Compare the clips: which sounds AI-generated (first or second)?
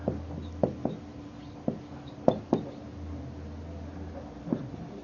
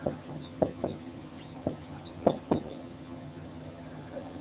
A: second